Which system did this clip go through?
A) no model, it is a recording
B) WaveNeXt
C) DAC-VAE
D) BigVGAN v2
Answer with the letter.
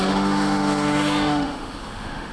C